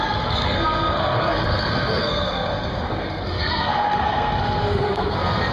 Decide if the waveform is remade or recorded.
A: remade